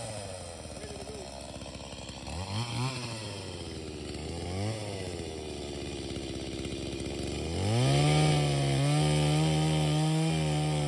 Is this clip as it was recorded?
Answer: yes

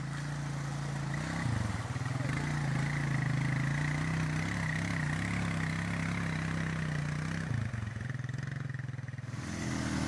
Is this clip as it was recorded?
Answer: yes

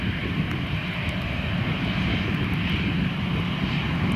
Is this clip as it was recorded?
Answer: yes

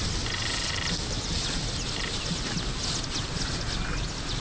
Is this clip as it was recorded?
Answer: yes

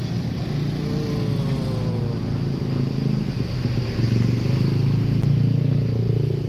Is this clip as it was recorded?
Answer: yes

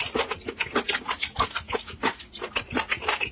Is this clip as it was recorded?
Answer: yes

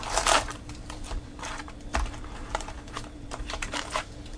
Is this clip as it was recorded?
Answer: no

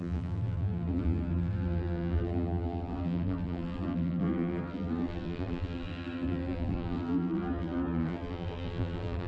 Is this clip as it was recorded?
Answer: no